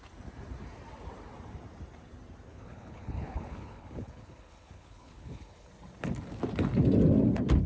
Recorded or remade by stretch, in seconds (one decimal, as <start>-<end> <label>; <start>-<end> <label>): 0.0-2.5 recorded; 2.5-5.7 remade; 5.7-7.7 recorded